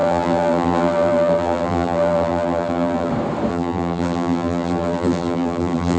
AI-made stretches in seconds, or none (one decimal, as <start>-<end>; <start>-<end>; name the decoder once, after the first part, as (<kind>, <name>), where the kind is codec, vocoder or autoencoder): 0.0-3.1 (vocoder, BigVGAN v2); 3.5-6.0

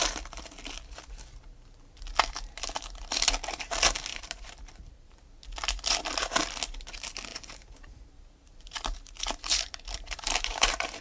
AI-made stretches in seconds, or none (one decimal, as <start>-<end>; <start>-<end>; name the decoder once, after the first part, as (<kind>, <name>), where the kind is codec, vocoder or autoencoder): 4.1-5.1 (vocoder, BigVGAN v2); 7.3-11.0

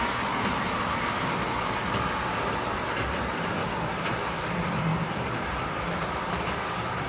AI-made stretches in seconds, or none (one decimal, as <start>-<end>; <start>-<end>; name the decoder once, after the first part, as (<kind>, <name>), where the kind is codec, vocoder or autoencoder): 3.6-4.2 (vocoder, BigVGAN v2); 4.9-6.6